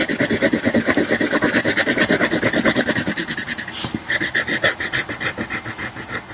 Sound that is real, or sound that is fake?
real